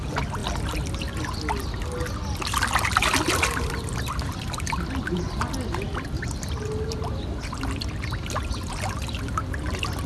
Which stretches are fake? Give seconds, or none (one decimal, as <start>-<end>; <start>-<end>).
none